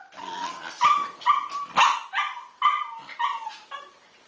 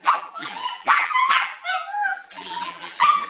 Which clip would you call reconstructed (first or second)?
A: second